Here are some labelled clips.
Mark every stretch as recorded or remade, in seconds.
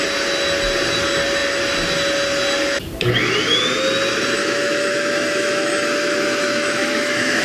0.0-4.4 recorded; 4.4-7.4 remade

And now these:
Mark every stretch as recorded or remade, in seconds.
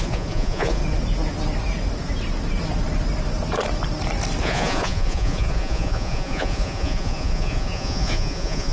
0.0-0.8 remade; 0.8-4.4 recorded; 4.4-8.7 remade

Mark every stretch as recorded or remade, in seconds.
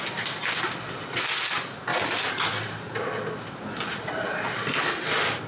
0.0-5.5 recorded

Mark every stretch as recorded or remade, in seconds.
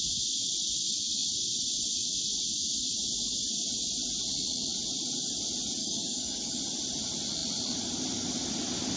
0.0-5.8 recorded; 5.8-6.6 remade; 6.6-9.0 recorded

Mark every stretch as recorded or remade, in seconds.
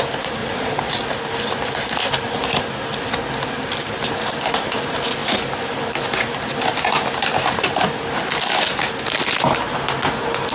0.0-0.4 recorded; 0.4-0.9 remade; 0.9-10.5 recorded